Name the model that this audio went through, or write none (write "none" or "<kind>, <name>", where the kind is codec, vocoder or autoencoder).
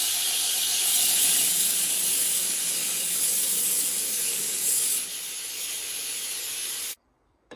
codec, DAC